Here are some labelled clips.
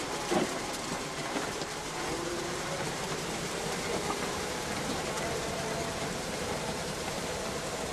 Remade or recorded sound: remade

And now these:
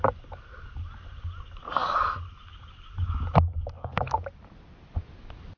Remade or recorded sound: recorded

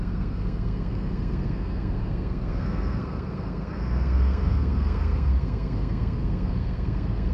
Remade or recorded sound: remade